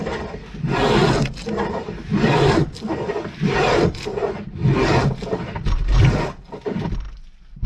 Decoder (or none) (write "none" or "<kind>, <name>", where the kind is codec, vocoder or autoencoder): none